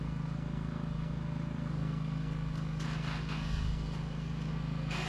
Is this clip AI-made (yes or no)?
yes